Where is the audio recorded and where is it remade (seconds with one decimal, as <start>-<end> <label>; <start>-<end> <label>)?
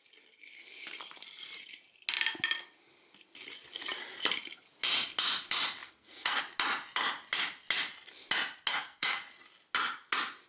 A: 0.0-5.8 recorded; 5.8-6.4 remade; 6.4-8.7 recorded; 8.7-9.2 remade; 9.2-10.5 recorded